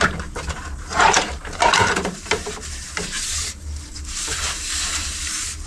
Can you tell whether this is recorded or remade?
remade